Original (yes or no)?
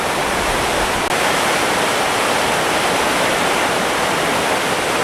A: yes